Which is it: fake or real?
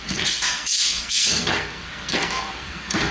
fake